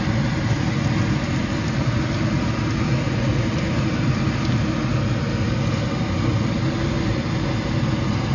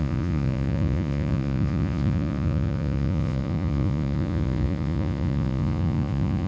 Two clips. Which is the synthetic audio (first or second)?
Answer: second